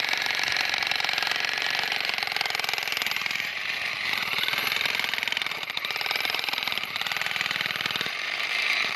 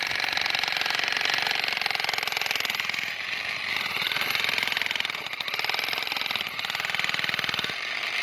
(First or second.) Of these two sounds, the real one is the second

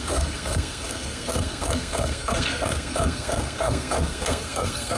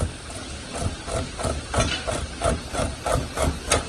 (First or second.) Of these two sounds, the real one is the second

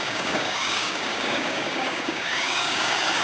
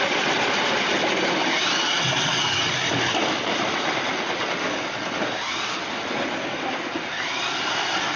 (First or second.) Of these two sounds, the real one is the second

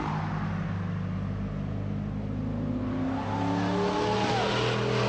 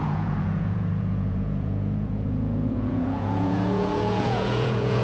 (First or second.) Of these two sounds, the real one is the first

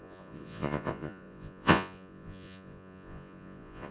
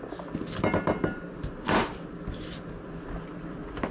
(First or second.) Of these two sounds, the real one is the second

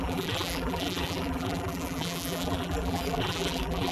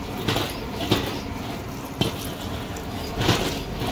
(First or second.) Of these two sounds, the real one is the second